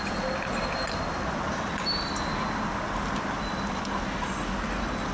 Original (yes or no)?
yes